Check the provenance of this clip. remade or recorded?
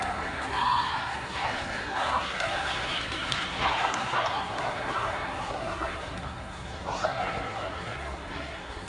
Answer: remade